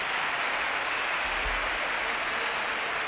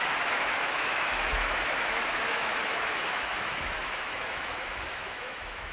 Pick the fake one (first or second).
second